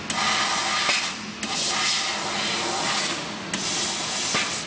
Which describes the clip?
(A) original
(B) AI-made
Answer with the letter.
A